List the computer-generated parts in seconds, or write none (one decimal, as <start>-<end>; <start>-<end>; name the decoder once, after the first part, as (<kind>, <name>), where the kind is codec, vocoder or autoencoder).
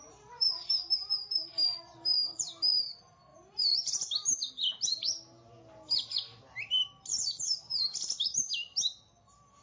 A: 0.0-0.7 (vocoder, BigVGAN v2); 3.3-4.5; 7.1-7.8